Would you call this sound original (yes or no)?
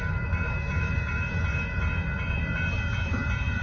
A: no